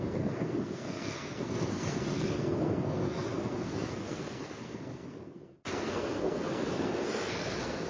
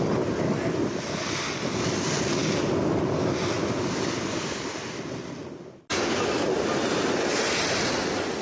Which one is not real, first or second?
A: first